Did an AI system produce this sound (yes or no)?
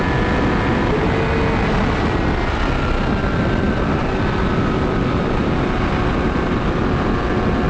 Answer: no